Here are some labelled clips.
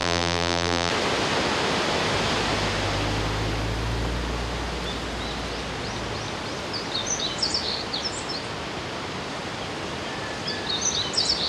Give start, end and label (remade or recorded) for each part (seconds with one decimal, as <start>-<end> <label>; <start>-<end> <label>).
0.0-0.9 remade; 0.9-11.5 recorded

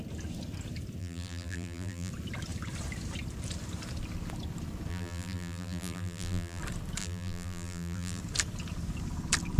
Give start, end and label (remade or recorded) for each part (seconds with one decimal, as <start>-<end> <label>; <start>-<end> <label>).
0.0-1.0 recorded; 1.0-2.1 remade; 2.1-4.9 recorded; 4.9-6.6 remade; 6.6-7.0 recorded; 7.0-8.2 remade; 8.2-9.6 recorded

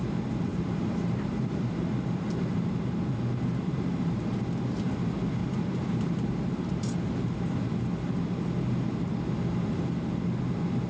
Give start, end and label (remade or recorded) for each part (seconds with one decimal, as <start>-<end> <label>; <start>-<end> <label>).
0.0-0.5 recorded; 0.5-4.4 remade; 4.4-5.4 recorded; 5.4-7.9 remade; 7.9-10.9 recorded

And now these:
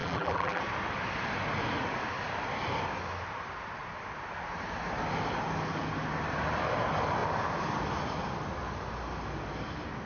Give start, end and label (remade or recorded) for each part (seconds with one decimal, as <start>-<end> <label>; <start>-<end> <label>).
0.0-0.6 remade; 0.6-10.1 recorded

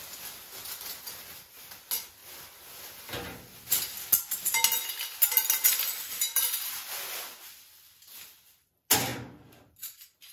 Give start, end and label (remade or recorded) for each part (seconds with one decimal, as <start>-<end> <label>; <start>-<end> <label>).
0.0-0.6 recorded; 0.6-1.8 remade; 1.8-10.3 recorded

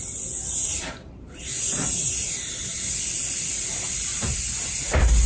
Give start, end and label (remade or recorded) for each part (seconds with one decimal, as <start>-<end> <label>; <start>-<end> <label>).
0.0-0.6 recorded; 0.6-2.6 remade; 2.6-4.1 recorded; 4.1-4.6 remade; 4.6-5.3 recorded